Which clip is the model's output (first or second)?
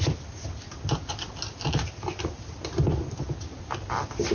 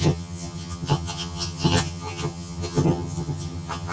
second